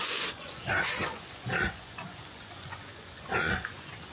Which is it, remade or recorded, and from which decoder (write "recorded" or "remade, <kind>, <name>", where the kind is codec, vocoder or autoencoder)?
remade, vocoder, Vocos